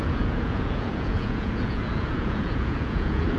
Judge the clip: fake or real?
fake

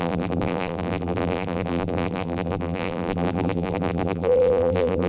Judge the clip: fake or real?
fake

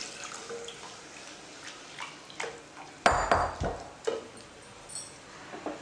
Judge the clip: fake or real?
real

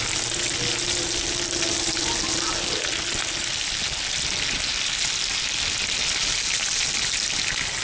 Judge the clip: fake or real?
real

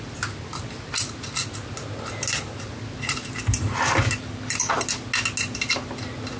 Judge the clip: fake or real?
real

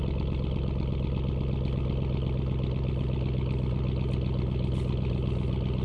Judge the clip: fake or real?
real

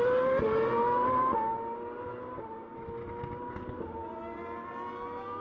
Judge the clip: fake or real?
real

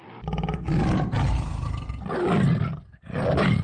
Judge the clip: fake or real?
real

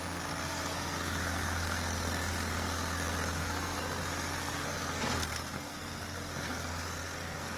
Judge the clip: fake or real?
fake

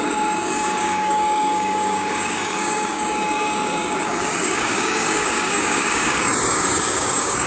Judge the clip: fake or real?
fake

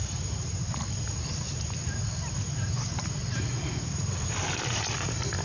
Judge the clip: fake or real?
real